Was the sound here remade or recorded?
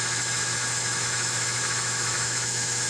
remade